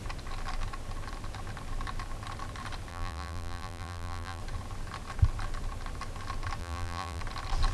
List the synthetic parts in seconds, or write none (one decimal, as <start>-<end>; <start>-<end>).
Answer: 2.9-4.4; 6.6-7.2